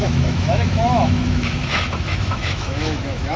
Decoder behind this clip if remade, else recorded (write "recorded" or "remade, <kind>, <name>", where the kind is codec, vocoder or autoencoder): remade, autoencoder, DAC-VAE